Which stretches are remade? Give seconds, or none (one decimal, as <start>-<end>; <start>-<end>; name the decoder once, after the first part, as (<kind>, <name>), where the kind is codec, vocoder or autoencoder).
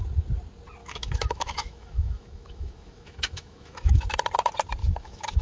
0.8-4.0 (autoencoder, DAC-VAE); 4.8-5.4